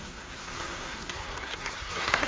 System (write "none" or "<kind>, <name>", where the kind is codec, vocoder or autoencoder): codec, SNAC